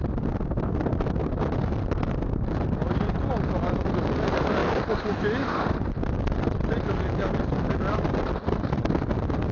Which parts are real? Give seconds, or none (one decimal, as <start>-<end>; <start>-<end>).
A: 0.0-9.5